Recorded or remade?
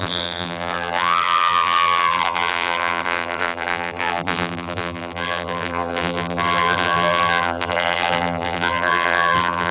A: remade